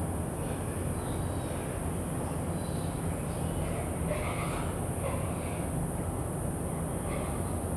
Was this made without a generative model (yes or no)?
yes